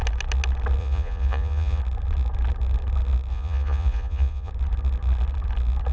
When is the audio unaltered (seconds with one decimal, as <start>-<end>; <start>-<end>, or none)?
0.0-0.8; 1.8-3.3; 4.5-5.9